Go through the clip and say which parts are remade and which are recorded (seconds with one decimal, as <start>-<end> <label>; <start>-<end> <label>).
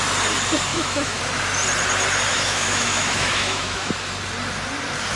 0.0-0.7 recorded; 0.7-1.2 remade; 1.2-2.3 recorded; 2.3-3.9 remade; 3.9-5.2 recorded